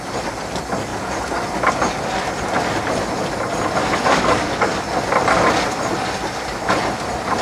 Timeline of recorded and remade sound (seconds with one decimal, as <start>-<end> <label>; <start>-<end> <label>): 0.0-3.8 recorded; 3.8-4.8 remade; 4.8-7.4 recorded